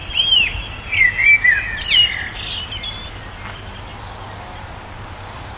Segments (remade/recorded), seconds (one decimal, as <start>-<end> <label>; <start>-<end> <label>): 0.0-5.6 recorded